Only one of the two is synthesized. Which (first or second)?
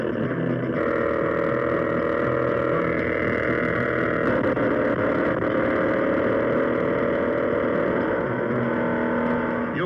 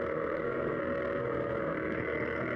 second